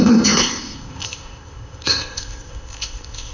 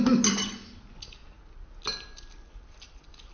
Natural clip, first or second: second